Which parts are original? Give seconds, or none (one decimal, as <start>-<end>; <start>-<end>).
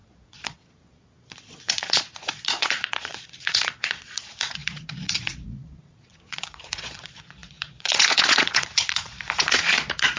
none